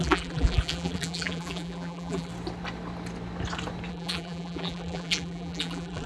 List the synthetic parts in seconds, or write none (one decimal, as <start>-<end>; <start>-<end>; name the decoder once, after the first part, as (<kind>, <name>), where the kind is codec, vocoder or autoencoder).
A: 0.0-2.3 (vocoder, BigVGAN v2); 3.9-6.1